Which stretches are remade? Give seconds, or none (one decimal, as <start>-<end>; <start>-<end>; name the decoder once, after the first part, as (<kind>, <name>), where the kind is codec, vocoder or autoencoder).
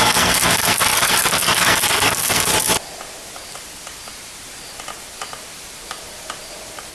0.0-2.5 (codec, SNAC)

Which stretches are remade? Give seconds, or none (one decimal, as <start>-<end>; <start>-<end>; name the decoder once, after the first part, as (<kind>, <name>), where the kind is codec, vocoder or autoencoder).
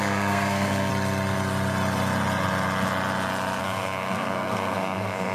0.0-0.9 (codec, SNAC); 3.6-5.3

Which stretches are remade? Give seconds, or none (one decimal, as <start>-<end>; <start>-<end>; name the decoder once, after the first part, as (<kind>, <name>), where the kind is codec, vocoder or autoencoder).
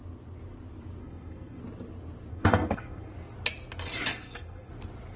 1.0-1.6 (codec, SNAC); 2.3-3.1; 4.1-4.7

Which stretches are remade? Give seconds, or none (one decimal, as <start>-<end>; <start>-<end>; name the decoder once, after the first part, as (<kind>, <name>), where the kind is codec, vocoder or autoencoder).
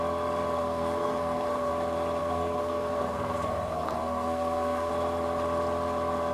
0.6-1.7 (codec, SNAC); 2.2-4.9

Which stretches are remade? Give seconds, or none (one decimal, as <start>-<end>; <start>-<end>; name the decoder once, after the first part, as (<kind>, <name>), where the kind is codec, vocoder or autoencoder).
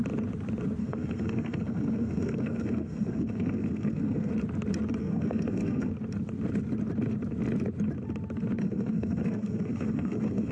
0.8-4.3 (codec, SNAC); 5.0-5.9; 8.6-10.5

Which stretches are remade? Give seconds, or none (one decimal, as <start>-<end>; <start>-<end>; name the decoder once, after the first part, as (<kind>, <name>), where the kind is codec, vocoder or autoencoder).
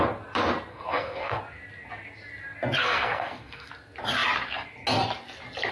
0.7-1.4 (codec, SNAC); 2.8-3.7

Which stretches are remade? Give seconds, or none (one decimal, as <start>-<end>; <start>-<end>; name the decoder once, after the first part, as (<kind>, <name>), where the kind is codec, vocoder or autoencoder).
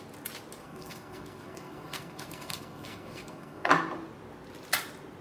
0.6-3.7 (codec, SNAC)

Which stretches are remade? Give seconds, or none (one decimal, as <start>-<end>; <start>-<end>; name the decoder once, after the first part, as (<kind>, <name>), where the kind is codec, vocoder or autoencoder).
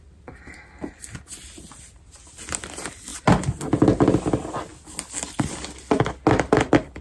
none